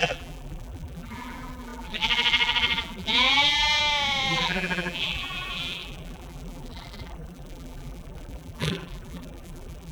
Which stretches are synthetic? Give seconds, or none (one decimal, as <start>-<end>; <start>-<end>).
0.0-3.8; 4.3-9.9